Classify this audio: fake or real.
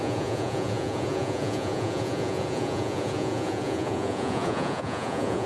fake